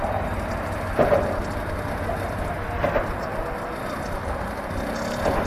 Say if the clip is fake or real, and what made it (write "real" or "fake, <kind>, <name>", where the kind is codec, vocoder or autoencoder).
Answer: real